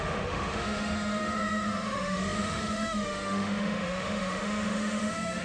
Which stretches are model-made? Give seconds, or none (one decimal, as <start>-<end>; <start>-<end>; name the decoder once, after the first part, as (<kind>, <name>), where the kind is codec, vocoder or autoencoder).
0.0-5.4 (autoencoder, DAC-VAE)